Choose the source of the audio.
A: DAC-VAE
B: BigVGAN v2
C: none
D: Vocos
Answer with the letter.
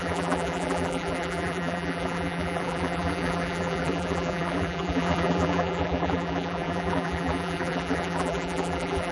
B